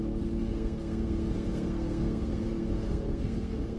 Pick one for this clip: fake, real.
fake